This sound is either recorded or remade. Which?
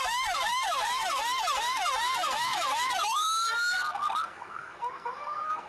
remade